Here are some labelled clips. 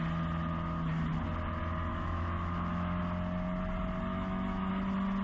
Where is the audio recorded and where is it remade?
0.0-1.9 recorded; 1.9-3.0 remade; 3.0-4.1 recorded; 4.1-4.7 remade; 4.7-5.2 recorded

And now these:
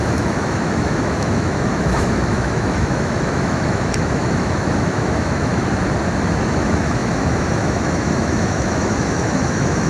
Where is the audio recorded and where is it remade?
0.0-5.5 remade; 5.5-6.3 recorded; 6.3-9.9 remade